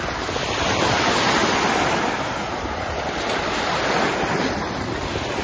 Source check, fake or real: real